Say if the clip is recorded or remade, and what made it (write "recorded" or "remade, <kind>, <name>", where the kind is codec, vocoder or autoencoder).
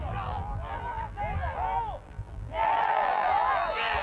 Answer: remade, vocoder, BigVGAN v2